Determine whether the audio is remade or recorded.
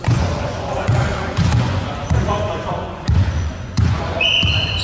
remade